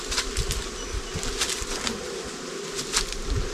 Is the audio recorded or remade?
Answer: recorded